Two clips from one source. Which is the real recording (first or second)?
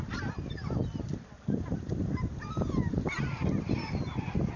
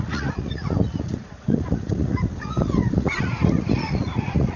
first